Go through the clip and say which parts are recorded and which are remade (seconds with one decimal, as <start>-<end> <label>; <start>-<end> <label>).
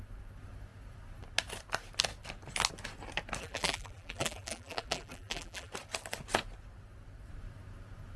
0.0-3.4 recorded; 3.4-5.7 remade; 5.7-8.2 recorded